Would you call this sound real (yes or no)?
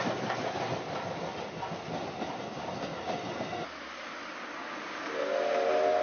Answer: yes